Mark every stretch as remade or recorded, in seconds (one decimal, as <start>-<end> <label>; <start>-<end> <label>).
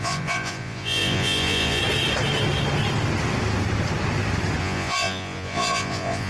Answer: 0.0-1.8 remade; 1.8-4.6 recorded; 4.6-6.3 remade